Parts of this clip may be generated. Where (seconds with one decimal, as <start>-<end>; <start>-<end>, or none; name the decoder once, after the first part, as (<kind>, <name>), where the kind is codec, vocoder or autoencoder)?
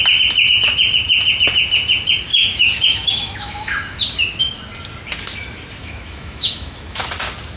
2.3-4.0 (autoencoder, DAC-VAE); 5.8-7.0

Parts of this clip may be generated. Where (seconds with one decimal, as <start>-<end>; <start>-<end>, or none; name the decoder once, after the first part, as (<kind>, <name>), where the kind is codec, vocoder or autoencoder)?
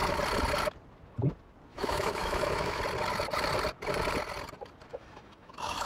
1.7-2.8 (autoencoder, DAC-VAE); 4.9-5.9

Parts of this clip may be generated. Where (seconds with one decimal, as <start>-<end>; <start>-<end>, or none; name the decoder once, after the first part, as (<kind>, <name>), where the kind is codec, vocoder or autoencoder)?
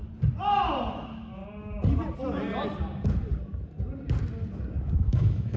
0.9-1.4 (autoencoder, DAC-VAE); 4.8-5.6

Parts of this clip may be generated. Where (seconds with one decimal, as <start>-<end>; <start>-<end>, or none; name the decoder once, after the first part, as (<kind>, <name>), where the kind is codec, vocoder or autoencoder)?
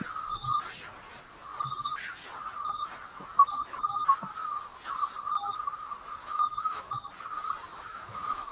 6.2-6.9 (autoencoder, DAC-VAE); 7.7-8.5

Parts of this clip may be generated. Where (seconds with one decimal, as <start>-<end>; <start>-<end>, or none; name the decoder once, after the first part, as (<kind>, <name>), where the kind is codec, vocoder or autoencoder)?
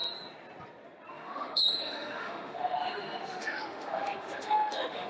1.1-5.1 (autoencoder, DAC-VAE)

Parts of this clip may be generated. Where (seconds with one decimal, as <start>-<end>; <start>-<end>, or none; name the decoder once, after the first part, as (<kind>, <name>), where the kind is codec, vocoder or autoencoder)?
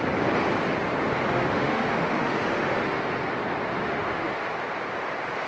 1.3-3.0 (autoencoder, DAC-VAE); 3.8-4.4